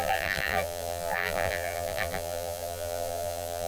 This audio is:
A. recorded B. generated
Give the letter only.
B